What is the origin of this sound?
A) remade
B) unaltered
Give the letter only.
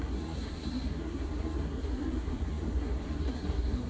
A